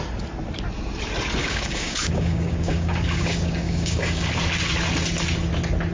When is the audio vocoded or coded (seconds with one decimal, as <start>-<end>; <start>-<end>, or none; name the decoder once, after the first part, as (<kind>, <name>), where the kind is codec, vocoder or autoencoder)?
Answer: 1.4-4.3 (codec, DAC)